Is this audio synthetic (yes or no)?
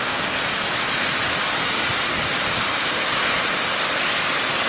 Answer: no